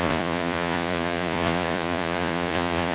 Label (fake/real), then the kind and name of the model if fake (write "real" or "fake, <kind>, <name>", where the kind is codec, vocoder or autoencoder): fake, vocoder, Vocos